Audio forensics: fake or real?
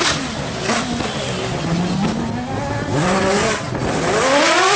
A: real